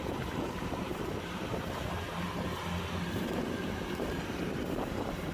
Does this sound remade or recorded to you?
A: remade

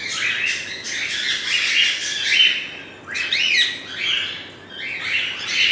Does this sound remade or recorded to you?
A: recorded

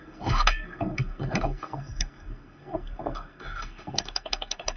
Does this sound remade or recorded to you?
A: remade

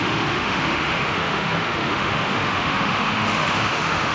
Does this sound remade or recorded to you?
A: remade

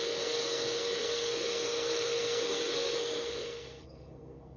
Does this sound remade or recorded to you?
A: remade